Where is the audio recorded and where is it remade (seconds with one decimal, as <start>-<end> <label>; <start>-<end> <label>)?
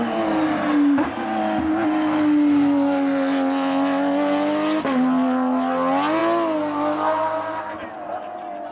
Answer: 0.0-8.7 recorded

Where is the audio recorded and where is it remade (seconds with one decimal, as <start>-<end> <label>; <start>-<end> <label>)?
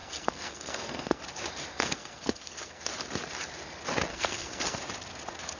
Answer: 0.0-1.2 remade; 1.2-1.7 recorded; 1.7-2.9 remade; 2.9-4.1 recorded; 4.1-4.8 remade; 4.8-5.6 recorded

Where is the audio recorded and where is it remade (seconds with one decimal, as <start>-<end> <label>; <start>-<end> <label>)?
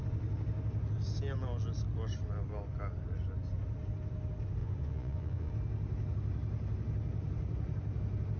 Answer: 0.0-4.6 recorded; 4.6-5.5 remade; 5.5-8.4 recorded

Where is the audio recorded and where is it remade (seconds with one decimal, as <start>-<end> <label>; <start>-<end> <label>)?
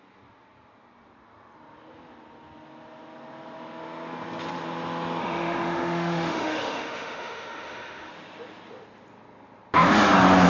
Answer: 0.0-5.2 recorded; 5.2-8.1 remade; 8.1-10.5 recorded